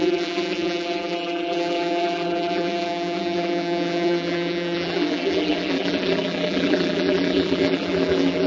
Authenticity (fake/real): fake